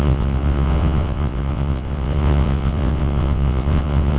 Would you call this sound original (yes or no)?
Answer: no